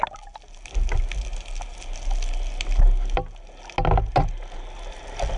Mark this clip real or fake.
real